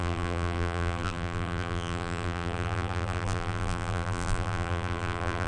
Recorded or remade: remade